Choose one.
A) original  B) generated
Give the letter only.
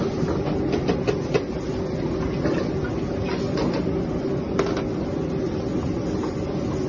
A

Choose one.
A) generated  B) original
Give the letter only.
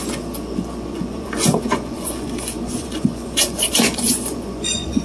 A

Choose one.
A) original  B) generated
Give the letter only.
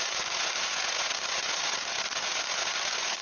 B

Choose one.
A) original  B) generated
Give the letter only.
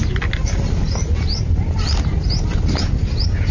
A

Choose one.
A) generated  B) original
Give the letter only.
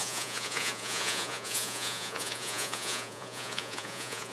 A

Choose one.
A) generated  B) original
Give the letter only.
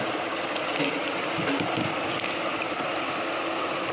B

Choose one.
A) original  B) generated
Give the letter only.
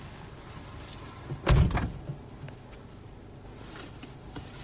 A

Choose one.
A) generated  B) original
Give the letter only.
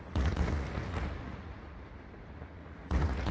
A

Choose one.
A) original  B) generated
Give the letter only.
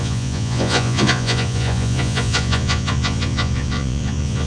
B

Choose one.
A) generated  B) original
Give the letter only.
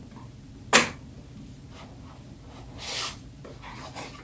B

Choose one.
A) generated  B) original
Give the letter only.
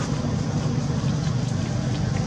B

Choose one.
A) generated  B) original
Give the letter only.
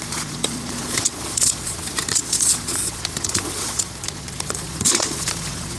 A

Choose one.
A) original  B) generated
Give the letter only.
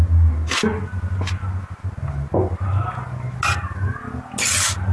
A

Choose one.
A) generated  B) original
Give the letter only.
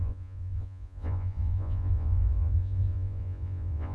A